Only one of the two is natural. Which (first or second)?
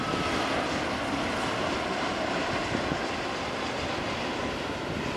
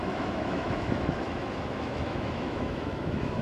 first